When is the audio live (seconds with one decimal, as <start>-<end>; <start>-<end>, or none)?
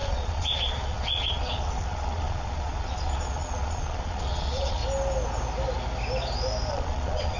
4.8-6.7